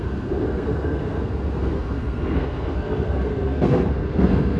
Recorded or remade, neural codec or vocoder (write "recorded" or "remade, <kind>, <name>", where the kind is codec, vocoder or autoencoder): remade, codec, SNAC